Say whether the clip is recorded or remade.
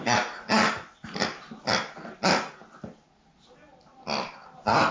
recorded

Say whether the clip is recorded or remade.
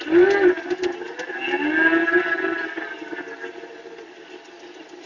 recorded